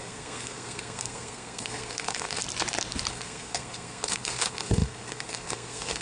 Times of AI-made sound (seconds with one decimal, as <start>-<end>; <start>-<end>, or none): 0.0-2.4; 3.1-6.0